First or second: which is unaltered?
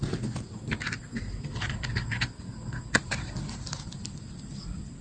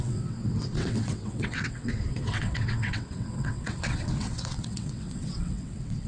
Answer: first